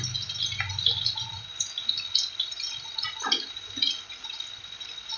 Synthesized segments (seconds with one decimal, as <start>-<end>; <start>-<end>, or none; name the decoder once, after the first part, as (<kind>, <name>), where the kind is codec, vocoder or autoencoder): none